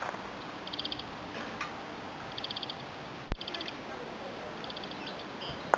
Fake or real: real